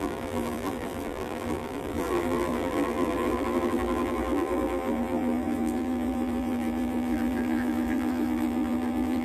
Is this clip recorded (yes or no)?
no